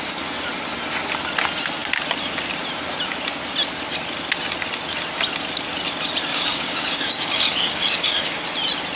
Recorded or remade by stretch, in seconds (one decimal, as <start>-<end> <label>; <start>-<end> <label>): 0.0-6.3 recorded; 6.3-8.4 remade; 8.4-9.0 recorded